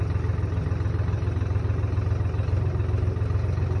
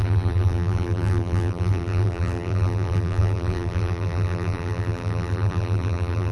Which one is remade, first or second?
second